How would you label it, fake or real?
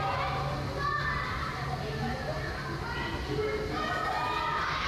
real